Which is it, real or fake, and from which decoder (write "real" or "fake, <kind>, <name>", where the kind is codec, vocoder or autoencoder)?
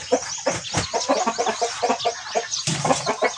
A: real